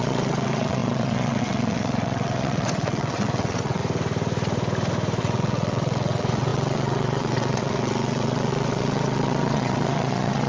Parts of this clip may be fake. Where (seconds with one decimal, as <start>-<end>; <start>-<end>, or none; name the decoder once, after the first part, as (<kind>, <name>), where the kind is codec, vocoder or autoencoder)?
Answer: 0.0-3.8 (vocoder, WaveNeXt); 5.2-10.5